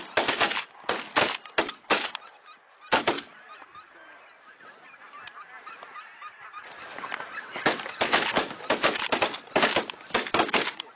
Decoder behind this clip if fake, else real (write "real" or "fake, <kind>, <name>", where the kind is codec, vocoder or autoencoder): real